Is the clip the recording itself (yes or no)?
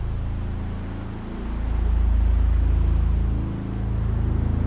yes